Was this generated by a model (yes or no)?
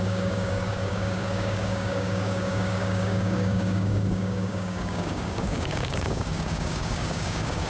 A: yes